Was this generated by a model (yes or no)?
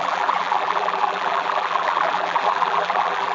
yes